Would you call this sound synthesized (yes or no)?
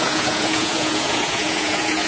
yes